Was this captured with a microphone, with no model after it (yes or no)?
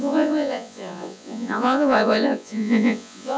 no